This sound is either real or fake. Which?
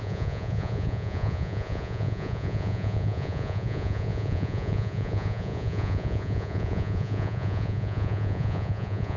fake